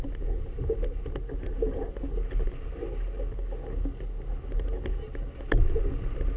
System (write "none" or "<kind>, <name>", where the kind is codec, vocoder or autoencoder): none